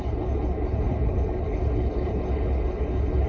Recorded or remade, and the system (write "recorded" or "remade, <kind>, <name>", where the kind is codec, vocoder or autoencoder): remade, codec, HILCodec